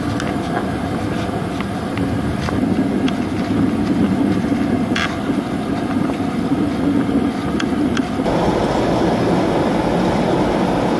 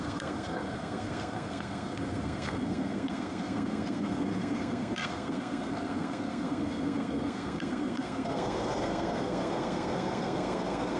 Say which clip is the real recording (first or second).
first